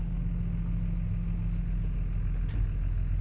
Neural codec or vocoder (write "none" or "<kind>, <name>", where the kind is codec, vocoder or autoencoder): none